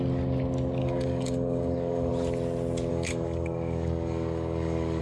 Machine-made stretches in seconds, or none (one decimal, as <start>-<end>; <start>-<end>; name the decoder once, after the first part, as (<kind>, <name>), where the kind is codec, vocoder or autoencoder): 0.8-2.1 (codec, DAC); 2.9-5.0